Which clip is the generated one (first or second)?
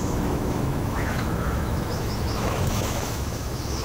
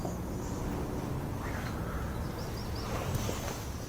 first